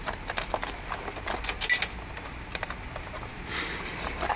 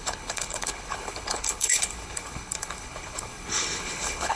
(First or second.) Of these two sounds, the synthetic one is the second